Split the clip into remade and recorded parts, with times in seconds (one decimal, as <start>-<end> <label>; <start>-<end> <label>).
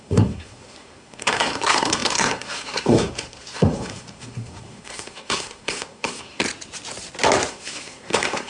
0.0-6.4 remade; 6.4-7.5 recorded; 7.5-8.5 remade